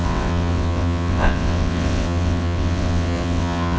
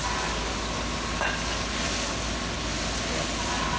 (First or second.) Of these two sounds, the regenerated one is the first